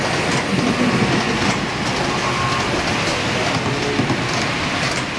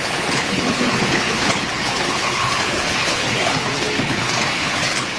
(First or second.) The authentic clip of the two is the first